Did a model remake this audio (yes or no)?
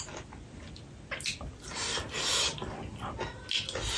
no